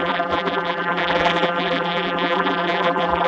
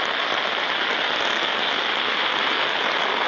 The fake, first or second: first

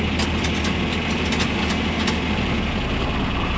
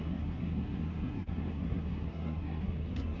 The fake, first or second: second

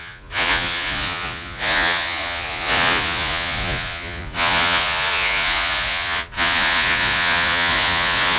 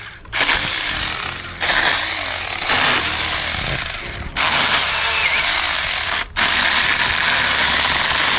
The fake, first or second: first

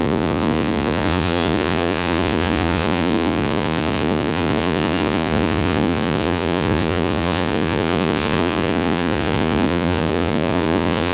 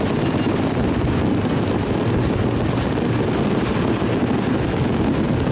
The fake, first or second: first